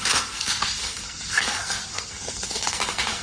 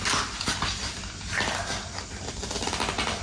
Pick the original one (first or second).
second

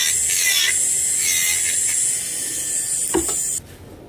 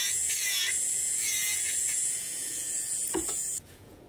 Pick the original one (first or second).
first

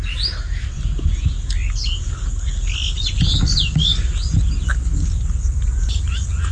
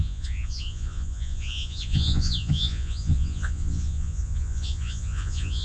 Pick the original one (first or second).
first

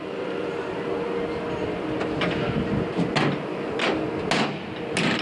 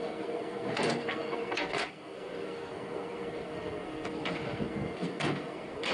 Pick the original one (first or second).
first